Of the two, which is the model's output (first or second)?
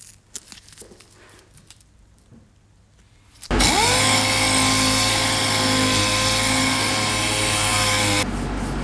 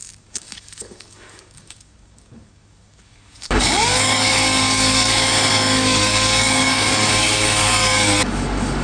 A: second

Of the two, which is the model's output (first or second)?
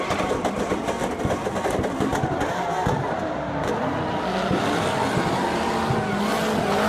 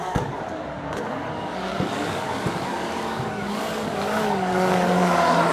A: second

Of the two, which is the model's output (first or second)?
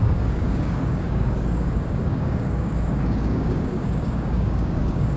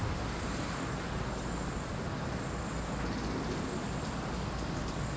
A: first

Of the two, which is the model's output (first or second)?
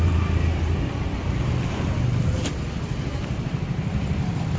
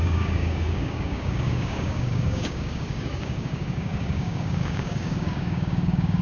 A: second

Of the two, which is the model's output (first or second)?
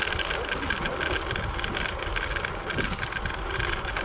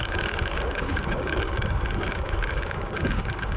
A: second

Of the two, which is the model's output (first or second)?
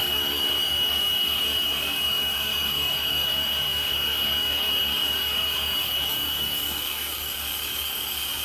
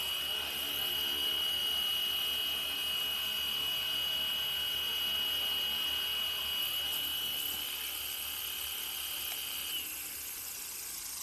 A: first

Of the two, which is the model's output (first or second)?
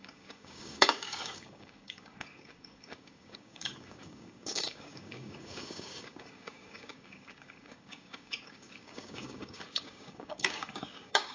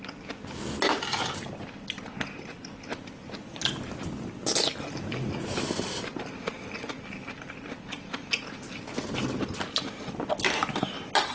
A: first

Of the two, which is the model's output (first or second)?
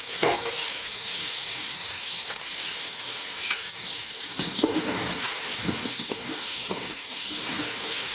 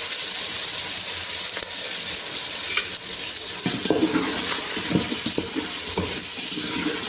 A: first